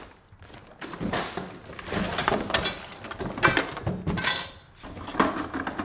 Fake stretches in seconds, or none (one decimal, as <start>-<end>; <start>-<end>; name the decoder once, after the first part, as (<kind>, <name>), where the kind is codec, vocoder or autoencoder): none